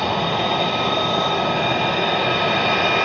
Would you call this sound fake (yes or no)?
no